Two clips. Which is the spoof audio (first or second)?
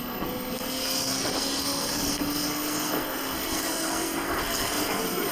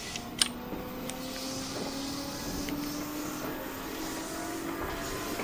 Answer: first